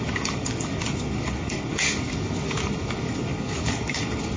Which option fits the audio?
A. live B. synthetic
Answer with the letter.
B